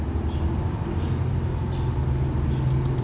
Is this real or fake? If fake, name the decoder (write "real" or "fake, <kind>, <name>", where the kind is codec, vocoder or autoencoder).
real